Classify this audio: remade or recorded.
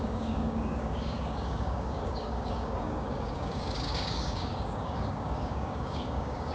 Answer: remade